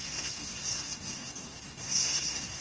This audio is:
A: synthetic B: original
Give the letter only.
A